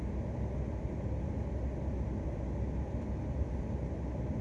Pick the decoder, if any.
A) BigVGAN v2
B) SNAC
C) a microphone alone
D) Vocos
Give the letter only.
C